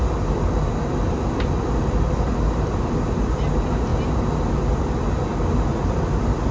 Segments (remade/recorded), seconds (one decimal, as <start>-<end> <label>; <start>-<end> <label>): 0.0-6.5 recorded

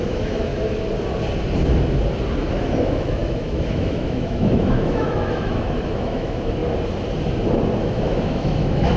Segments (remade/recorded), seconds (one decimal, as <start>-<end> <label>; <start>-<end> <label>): 0.0-0.5 remade; 0.5-2.8 recorded; 2.8-6.6 remade; 6.6-7.8 recorded; 7.8-9.0 remade

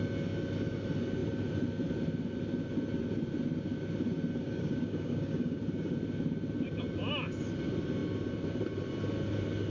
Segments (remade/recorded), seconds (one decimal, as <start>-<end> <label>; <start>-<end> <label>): 0.0-4.4 recorded; 4.4-5.6 remade; 5.6-9.7 recorded

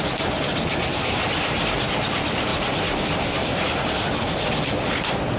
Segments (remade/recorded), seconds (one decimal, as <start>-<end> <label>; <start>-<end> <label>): 0.0-5.4 recorded

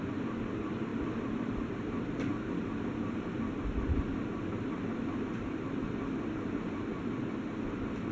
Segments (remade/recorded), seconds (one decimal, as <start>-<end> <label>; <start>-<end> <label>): 0.0-8.1 recorded

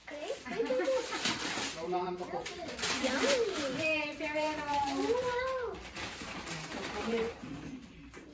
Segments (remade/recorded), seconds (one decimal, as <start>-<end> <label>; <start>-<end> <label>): 0.0-8.3 remade

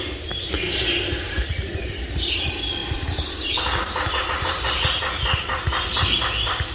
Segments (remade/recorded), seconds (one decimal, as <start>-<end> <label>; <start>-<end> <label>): 0.0-4.1 recorded; 4.1-5.0 remade; 5.0-6.7 recorded

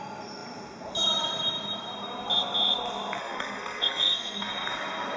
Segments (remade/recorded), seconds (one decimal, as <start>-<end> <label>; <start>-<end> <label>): 0.0-3.2 recorded; 3.2-4.5 remade; 4.5-5.2 recorded